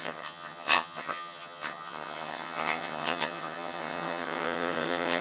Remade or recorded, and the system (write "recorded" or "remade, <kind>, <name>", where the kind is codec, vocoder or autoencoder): remade, vocoder, HiFi-GAN